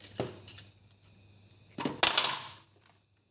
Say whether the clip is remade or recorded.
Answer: recorded